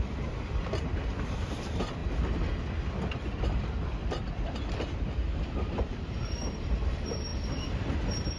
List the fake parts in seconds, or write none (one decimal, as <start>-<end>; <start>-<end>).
0.0-2.0; 3.4-8.4